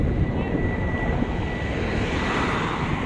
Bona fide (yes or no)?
yes